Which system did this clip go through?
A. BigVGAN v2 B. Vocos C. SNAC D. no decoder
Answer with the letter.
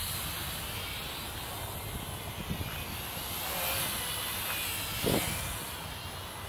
D